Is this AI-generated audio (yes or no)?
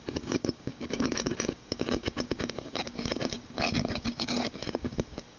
yes